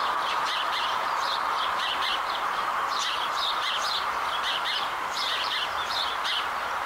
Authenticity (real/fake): fake